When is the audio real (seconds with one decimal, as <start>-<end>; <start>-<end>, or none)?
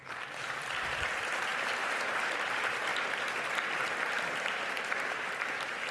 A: 2.9-5.1